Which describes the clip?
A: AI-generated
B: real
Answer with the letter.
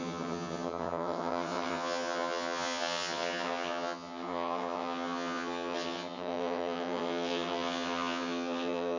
A